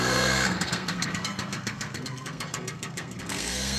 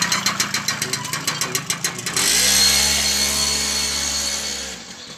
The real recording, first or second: second